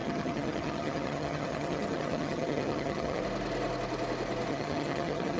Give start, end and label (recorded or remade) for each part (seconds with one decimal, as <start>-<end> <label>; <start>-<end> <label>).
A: 0.0-3.2 remade; 3.2-4.5 recorded; 4.5-5.4 remade